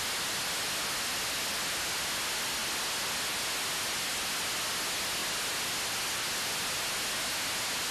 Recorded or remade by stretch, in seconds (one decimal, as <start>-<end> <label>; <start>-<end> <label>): 0.0-7.9 recorded